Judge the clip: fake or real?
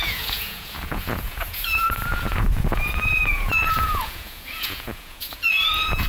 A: fake